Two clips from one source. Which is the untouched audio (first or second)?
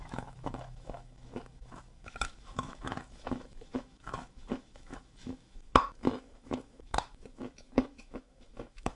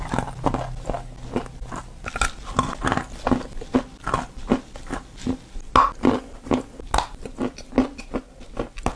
second